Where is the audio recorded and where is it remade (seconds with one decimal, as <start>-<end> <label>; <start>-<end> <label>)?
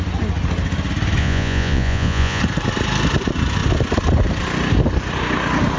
0.0-1.2 recorded; 1.2-2.4 remade; 2.4-5.8 recorded